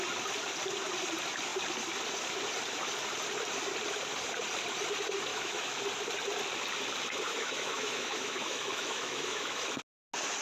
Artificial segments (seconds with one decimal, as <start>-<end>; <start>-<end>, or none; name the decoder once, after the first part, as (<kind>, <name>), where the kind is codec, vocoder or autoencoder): 5.3-5.8 (autoencoder, DAC-VAE); 7.3-9.8